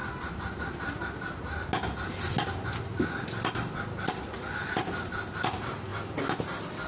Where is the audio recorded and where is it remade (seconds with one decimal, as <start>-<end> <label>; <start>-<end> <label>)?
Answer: 0.0-6.9 recorded